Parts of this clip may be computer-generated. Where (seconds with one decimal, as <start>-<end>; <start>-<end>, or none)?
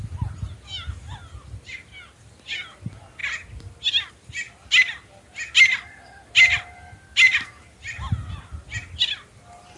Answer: none